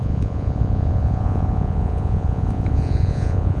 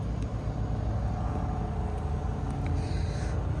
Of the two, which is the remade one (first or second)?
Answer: first